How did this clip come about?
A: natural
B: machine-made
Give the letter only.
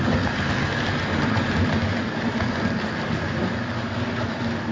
A